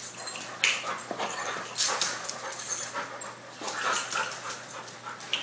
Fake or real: real